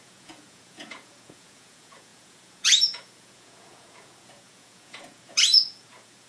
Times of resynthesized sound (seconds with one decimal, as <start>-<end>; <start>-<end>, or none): 0.0-6.3